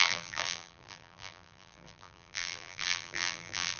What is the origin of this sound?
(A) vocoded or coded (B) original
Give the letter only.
A